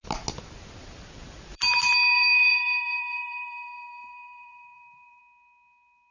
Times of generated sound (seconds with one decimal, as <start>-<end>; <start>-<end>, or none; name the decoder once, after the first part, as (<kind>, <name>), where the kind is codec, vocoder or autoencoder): 1.5-5.2 (vocoder, BigVGAN v2)